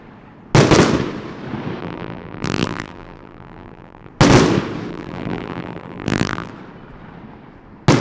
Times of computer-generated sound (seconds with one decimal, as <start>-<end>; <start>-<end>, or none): 1.8-4.1; 4.9-6.5